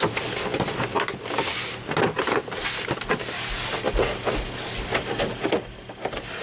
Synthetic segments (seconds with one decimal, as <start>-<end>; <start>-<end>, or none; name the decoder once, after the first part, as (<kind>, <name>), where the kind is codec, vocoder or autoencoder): none

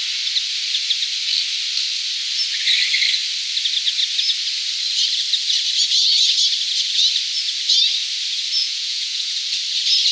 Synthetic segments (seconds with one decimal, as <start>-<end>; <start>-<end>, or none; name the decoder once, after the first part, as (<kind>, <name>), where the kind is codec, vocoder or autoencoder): 8.6-9.3 (vocoder, Vocos)